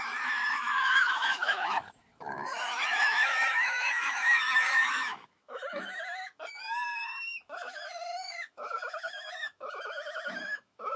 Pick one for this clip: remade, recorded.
remade